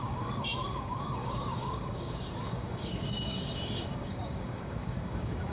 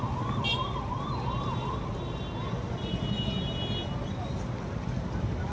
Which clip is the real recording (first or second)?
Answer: second